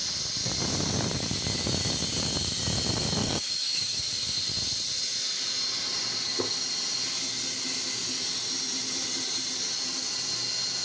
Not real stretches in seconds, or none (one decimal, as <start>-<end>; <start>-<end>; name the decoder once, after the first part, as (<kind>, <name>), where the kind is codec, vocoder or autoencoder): 3.2-4.0 (codec, DAC)